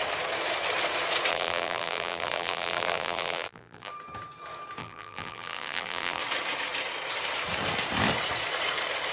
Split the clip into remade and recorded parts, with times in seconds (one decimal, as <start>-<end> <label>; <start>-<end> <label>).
0.0-1.3 recorded; 1.3-3.9 remade; 3.9-4.8 recorded; 4.8-6.2 remade; 6.2-9.1 recorded